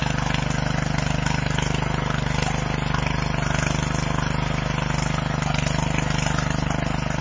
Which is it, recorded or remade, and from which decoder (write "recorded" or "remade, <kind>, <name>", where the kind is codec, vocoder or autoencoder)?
recorded